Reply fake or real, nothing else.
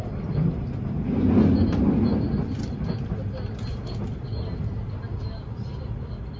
real